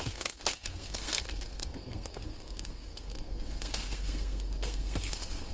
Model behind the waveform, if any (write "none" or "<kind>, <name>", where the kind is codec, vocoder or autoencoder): codec, SNAC